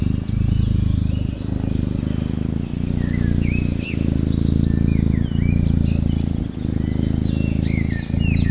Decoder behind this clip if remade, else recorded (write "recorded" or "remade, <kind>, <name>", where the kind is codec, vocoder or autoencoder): recorded